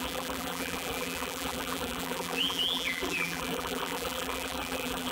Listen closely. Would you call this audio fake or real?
fake